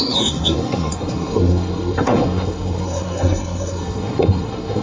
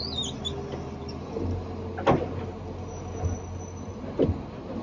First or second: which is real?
second